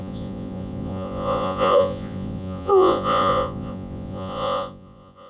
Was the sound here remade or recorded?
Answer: remade